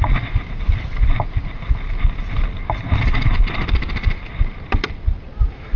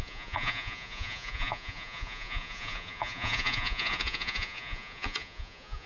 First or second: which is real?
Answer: first